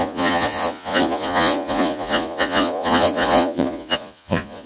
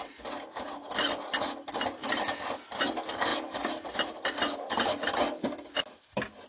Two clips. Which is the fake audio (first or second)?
first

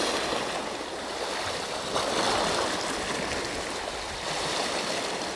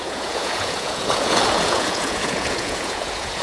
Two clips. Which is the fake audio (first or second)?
second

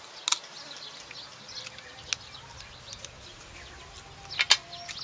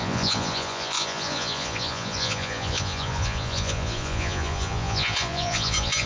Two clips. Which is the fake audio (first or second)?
second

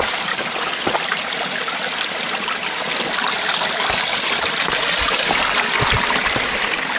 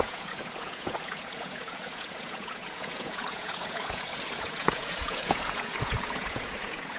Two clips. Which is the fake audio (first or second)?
second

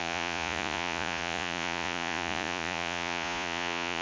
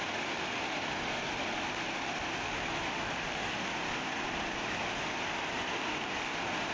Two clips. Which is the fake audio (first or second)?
first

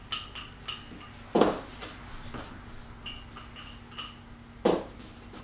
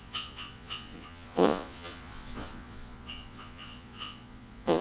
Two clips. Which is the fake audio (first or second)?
second